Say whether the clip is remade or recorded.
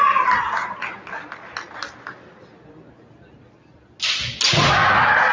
recorded